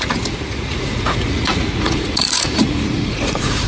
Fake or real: fake